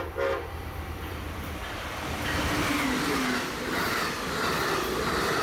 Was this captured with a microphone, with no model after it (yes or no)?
yes